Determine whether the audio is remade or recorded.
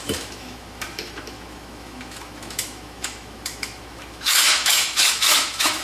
remade